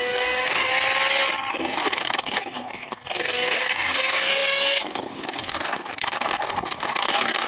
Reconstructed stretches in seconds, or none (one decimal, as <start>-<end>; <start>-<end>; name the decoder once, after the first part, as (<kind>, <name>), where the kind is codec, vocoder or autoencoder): 0.0-0.7 (codec, DAC); 1.5-7.5